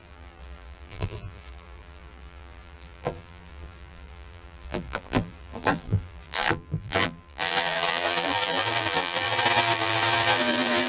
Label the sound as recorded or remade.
remade